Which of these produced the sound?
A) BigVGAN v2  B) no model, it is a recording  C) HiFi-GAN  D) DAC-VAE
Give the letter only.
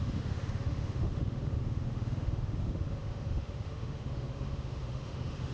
D